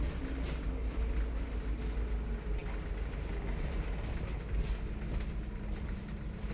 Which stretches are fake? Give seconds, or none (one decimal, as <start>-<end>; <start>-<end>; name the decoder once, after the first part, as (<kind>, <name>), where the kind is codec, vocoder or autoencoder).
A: none

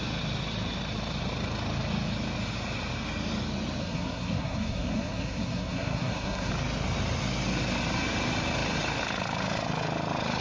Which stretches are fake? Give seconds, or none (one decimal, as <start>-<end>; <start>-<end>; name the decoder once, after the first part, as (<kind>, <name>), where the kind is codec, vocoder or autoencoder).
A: 3.8-6.5 (codec, SNAC)

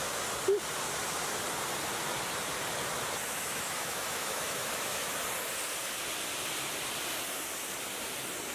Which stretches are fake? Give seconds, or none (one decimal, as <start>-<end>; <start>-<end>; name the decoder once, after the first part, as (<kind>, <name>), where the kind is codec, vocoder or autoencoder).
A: 3.2-5.1 (autoencoder, DAC-VAE)

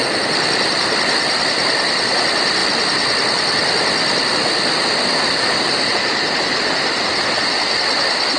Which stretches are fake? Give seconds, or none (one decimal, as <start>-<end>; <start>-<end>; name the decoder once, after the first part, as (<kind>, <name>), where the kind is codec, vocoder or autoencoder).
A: none